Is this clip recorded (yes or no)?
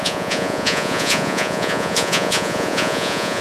no